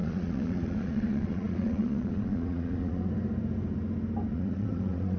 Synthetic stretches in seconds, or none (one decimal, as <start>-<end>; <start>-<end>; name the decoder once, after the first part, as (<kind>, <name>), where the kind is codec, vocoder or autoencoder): 0.0-3.1 (vocoder, Vocos); 4.3-5.2

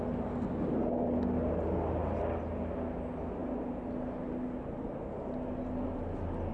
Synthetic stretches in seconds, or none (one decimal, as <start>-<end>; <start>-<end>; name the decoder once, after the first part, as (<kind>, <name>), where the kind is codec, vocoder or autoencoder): none

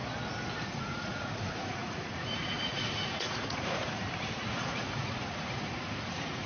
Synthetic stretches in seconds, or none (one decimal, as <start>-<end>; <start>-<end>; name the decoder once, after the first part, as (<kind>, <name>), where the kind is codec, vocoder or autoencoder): 0.7-4.0 (vocoder, Vocos); 4.6-6.5

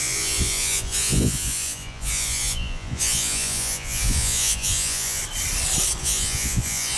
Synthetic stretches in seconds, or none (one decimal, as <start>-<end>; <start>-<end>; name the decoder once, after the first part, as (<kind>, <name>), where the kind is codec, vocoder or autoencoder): 0.0-5.2 (vocoder, Vocos); 6.0-7.0

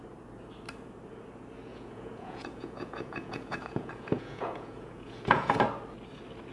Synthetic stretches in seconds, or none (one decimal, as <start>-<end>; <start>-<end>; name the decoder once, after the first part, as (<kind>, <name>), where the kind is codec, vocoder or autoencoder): 1.7-5.6 (vocoder, Vocos)

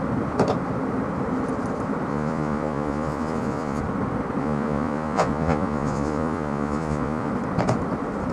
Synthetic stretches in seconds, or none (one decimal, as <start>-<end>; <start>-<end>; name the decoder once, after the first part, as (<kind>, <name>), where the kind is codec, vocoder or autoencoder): 2.1-3.8 (vocoder, Vocos); 4.4-7.3

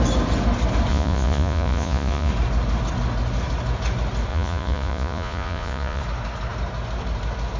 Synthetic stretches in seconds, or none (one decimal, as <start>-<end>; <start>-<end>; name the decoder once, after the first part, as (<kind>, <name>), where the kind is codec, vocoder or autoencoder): 0.9-2.3 (vocoder, Vocos); 4.3-6.0